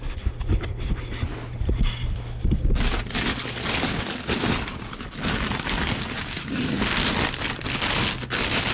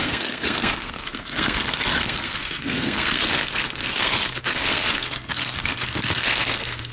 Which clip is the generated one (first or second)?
second